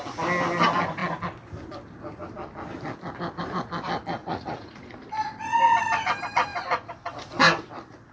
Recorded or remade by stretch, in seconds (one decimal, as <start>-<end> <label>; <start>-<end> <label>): 0.0-4.2 recorded; 4.2-4.9 remade; 4.9-8.1 recorded